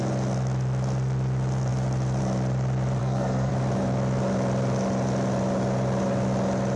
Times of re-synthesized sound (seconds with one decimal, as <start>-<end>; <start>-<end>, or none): 3.0-3.5